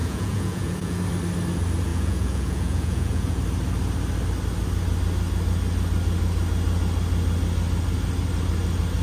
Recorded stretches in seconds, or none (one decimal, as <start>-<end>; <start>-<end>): 1.0-1.9; 3.4-9.0